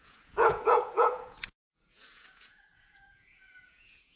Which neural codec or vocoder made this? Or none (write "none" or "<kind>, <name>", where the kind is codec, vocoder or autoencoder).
vocoder, Vocos